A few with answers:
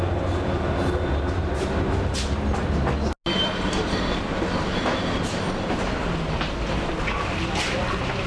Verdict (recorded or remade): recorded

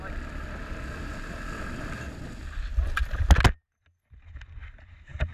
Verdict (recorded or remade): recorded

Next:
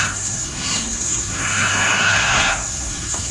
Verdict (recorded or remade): remade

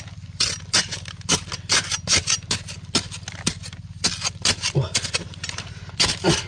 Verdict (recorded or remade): recorded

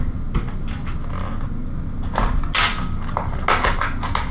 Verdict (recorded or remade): recorded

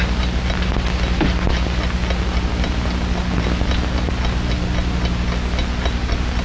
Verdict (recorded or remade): recorded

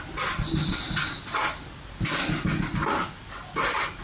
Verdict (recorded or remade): recorded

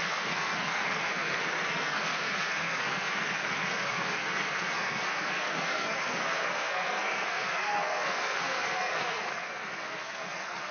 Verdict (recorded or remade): remade